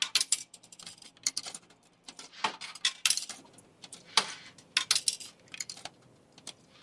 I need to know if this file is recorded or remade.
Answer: recorded